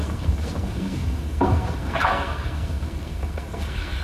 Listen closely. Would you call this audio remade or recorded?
remade